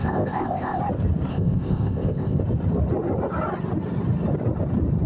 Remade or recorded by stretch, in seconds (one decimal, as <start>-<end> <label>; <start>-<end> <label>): 0.0-0.8 remade; 0.8-1.3 recorded; 1.3-2.4 remade; 2.4-5.1 recorded